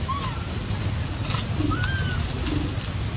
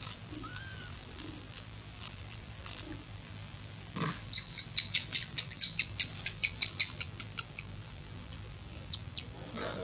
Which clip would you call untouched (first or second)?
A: first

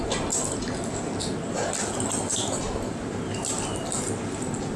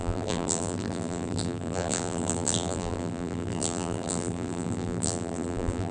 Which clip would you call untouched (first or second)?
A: first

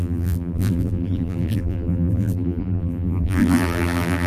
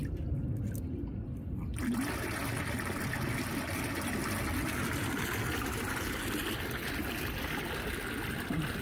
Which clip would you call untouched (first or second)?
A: second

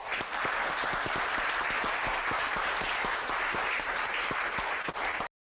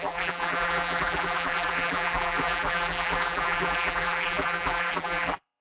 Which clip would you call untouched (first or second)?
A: first